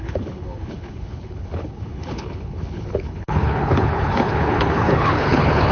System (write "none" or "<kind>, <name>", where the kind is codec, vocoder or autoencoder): codec, HILCodec